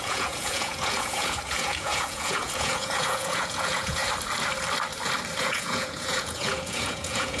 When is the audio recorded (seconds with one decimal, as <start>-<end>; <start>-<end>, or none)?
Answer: 4.0-5.4